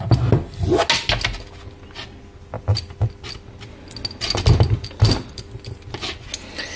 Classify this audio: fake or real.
real